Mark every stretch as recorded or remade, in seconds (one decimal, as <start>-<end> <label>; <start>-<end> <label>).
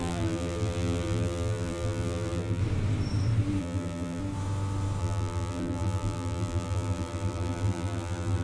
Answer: 0.0-2.6 remade; 2.6-3.6 recorded; 3.6-4.2 remade; 4.2-5.0 recorded; 5.0-8.4 remade